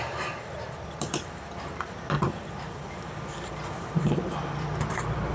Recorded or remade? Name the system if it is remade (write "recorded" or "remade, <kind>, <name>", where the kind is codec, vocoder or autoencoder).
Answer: remade, vocoder, BigVGAN v2